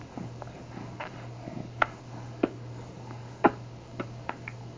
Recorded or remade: remade